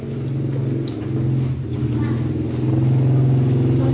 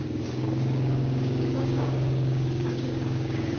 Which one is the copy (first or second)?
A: second